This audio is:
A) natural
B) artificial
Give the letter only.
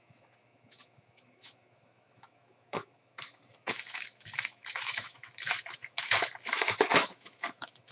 B